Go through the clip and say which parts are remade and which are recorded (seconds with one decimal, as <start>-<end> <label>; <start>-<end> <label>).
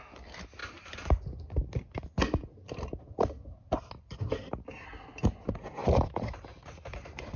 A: 0.0-5.8 recorded; 5.8-6.3 remade; 6.3-7.4 recorded